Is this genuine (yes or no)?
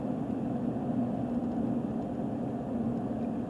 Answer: yes